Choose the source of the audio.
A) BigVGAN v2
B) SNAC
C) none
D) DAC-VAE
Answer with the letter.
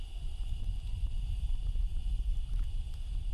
C